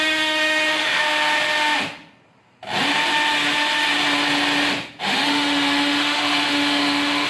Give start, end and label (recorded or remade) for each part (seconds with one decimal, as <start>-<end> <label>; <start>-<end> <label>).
0.0-1.0 remade; 1.0-5.0 recorded; 5.0-7.3 remade